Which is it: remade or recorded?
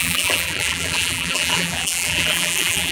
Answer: remade